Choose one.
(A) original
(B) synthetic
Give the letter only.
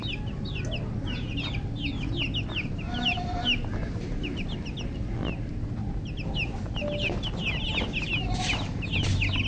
A